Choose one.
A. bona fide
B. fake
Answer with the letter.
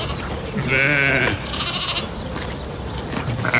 A